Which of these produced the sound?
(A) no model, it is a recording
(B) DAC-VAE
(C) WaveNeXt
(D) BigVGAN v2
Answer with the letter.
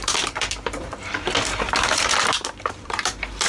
D